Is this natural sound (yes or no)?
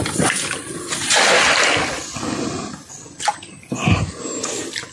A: yes